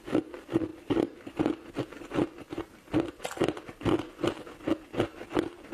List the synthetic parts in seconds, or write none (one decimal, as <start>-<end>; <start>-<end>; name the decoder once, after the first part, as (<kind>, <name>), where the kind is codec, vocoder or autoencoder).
none